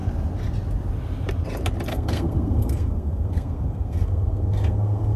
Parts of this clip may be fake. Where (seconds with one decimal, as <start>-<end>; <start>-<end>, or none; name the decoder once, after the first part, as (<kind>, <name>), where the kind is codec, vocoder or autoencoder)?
1.9-5.2 (codec, SNAC)

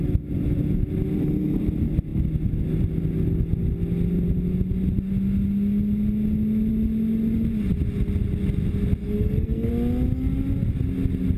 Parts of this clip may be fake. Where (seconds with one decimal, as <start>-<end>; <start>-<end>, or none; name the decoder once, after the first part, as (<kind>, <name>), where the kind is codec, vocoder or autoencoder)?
9.0-9.7 (codec, SNAC)

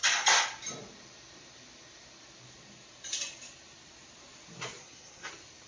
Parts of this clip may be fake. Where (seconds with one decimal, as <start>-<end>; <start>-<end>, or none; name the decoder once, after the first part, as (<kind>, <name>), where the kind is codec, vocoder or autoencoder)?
4.8-5.3 (codec, SNAC)

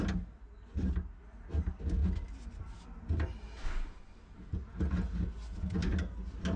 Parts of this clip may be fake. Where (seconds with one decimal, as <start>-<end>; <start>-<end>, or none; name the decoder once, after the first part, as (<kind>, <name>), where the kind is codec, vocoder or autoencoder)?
none

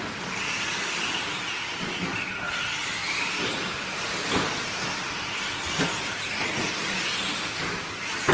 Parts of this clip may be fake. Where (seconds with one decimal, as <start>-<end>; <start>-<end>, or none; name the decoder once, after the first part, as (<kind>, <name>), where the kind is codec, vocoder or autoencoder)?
none

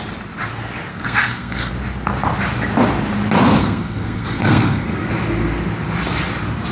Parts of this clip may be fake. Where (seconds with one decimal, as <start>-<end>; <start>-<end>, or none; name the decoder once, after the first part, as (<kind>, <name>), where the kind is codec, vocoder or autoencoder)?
0.9-1.7 (codec, SNAC); 3.6-5.1

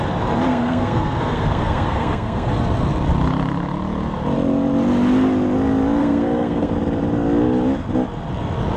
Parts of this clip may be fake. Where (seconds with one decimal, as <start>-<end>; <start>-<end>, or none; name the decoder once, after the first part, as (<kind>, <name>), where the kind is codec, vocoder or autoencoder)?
0.5-2.5 (codec, SNAC); 6.0-6.7

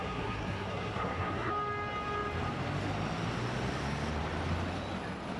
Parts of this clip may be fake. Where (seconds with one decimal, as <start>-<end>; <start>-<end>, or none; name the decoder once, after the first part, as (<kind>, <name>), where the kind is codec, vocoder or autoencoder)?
0.0-1.5 (codec, SNAC)